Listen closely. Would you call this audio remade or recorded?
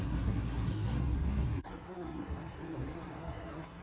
remade